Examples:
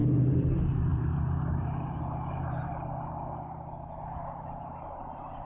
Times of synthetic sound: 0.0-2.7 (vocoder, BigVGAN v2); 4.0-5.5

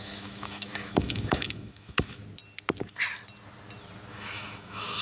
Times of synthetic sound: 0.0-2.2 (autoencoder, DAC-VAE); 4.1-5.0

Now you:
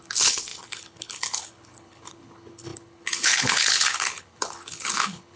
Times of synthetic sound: 0.0-5.4 (codec, HILCodec)

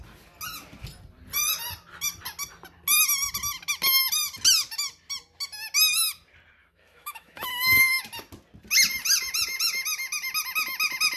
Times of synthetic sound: 6.6-8.0 (autoencoder, DAC-VAE)